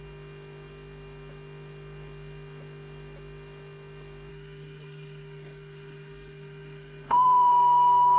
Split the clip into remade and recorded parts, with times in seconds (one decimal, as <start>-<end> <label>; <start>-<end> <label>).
0.0-4.3 recorded; 4.3-8.2 remade